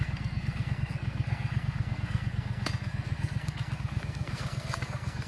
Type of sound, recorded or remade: remade